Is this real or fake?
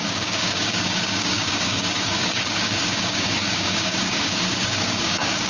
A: fake